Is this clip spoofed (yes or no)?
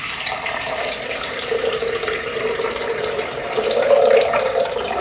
yes